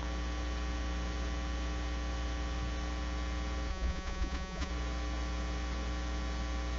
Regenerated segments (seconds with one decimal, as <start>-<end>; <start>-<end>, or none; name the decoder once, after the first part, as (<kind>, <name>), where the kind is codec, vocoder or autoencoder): 3.7-4.7 (vocoder, Vocos)